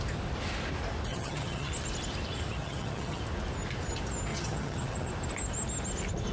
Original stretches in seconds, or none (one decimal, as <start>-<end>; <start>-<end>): 0.0-1.1; 1.7-2.5; 3.2-4.3; 5.1-6.3